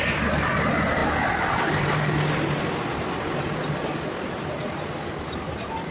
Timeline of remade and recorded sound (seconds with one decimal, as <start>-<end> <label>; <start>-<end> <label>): 0.0-5.9 recorded